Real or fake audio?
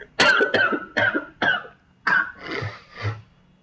real